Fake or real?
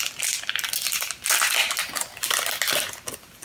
real